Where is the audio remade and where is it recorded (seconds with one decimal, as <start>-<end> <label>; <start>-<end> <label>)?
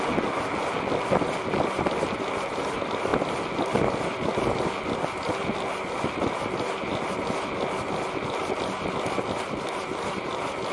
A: 0.0-10.7 recorded